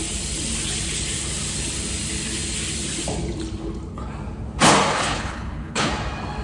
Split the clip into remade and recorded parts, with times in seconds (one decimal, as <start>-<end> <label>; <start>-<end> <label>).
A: 0.0-5.0 recorded; 5.0-5.9 remade; 5.9-6.4 recorded